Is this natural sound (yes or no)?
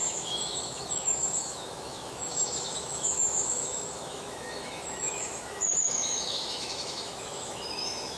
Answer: no